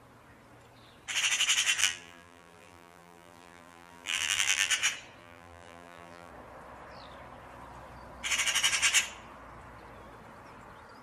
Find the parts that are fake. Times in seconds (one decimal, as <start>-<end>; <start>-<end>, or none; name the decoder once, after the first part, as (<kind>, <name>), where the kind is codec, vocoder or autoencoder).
1.8-4.7 (vocoder, BigVGAN v2); 5.2-6.3